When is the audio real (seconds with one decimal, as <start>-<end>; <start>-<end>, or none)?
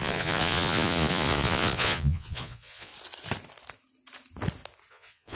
2.9-4.9